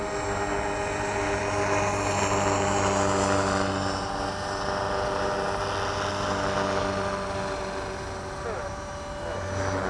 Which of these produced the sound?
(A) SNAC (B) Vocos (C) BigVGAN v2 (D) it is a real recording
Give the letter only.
D